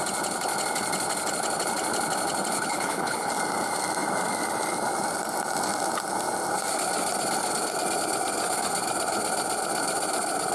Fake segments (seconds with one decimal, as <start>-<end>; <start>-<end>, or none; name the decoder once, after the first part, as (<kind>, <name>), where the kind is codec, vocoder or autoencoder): 2.5-3.3 (codec, HILCodec)